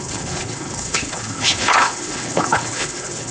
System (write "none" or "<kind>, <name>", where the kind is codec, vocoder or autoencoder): codec, HILCodec